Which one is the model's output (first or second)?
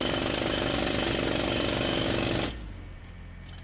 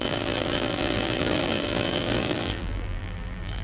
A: second